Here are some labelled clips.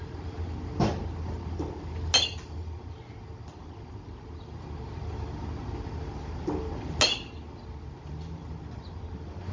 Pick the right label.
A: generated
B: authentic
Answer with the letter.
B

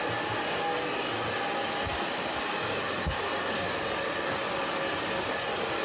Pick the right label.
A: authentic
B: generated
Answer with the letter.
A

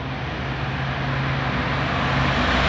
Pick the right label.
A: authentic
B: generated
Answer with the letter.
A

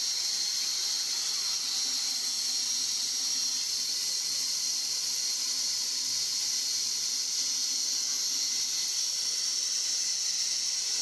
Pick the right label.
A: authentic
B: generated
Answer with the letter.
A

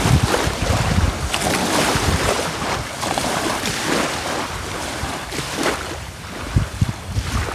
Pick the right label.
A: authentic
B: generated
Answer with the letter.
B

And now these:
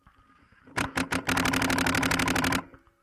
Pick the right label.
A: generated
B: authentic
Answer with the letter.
A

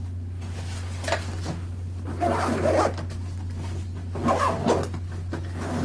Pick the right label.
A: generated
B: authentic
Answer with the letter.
B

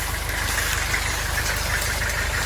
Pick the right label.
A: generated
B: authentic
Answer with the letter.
B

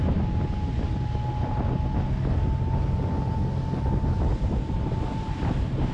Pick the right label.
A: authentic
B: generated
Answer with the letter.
A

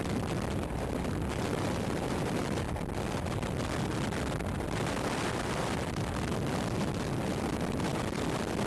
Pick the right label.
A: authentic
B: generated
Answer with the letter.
B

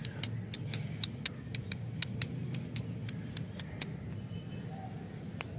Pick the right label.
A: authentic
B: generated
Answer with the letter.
A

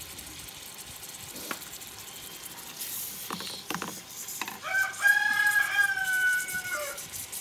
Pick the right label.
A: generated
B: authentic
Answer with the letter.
A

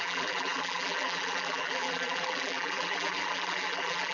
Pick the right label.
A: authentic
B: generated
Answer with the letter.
B